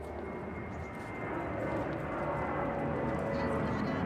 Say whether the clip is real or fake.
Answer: real